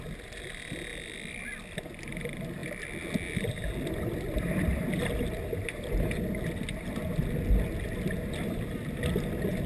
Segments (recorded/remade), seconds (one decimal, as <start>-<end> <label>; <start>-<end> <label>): 0.0-9.7 recorded